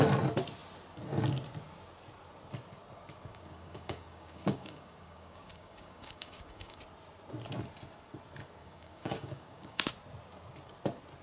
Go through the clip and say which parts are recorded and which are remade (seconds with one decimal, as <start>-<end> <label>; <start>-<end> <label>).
0.0-3.3 recorded; 3.3-6.8 remade; 6.8-8.6 recorded; 8.6-9.9 remade; 9.9-11.2 recorded